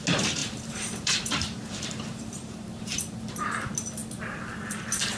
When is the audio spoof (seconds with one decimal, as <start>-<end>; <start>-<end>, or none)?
0.4-3.5